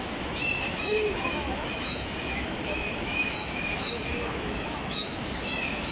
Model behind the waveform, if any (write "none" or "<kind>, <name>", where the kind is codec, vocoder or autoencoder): autoencoder, DAC-VAE